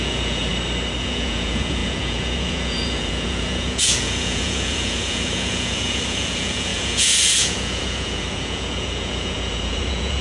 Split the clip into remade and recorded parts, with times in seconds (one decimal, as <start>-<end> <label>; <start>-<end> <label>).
0.0-0.5 remade; 0.5-1.0 recorded; 1.0-10.2 remade